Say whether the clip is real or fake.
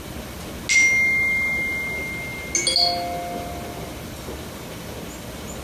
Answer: real